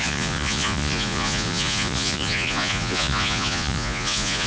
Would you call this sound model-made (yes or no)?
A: yes